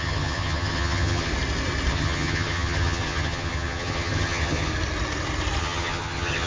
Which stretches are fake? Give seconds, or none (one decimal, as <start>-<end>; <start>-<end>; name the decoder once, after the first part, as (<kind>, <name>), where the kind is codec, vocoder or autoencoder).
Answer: 0.0-1.3 (vocoder, HiFi-GAN); 1.9-4.7; 5.6-6.5